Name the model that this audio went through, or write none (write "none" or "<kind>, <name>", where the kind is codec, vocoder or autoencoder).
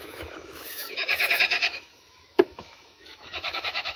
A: autoencoder, DAC-VAE